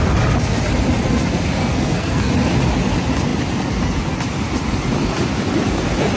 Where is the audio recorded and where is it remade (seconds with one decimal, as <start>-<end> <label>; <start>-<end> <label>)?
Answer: 0.0-1.6 recorded; 1.6-2.3 remade; 2.3-6.2 recorded